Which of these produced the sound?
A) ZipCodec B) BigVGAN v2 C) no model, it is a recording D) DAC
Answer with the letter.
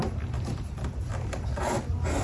B